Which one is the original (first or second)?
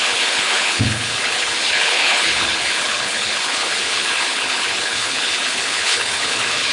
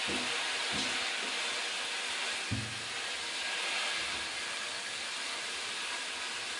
second